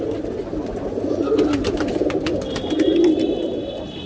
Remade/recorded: recorded